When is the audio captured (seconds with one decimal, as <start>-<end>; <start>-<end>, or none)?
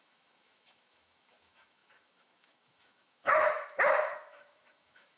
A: none